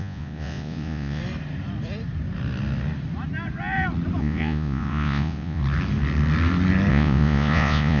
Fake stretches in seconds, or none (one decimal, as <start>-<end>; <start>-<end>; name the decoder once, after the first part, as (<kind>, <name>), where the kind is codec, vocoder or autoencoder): 0.0-1.2 (vocoder, Vocos); 4.2-5.6; 6.9-8.0